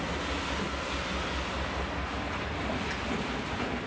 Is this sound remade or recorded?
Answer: recorded